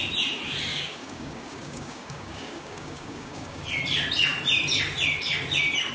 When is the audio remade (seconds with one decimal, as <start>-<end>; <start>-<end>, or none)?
0.7-3.6